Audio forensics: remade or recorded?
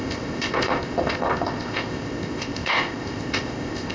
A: remade